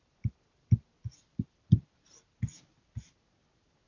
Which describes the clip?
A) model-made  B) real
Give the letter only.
B